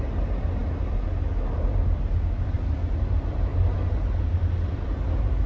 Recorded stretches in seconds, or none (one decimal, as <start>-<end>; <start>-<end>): 0.0-5.5

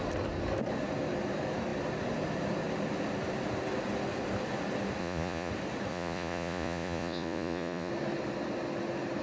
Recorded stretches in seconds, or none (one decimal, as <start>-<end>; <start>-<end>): 0.0-5.0; 5.5-5.9; 7.9-9.2

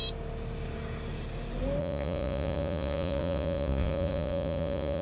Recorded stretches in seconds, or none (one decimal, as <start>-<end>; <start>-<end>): 0.0-1.8

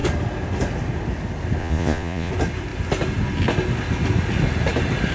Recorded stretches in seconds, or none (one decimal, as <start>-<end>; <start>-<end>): 0.0-1.6; 2.3-5.1

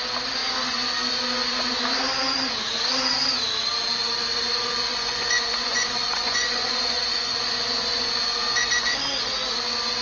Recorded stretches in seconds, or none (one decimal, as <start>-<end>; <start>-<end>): 0.0-4.9; 9.0-10.0

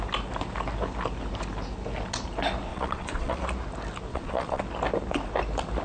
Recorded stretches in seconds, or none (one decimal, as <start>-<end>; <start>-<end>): 0.0-2.7; 3.4-4.1; 4.6-5.8

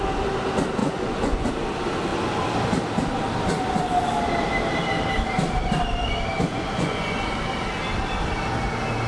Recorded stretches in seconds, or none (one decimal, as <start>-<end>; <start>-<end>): 0.0-0.8; 1.5-6.5; 7.3-9.1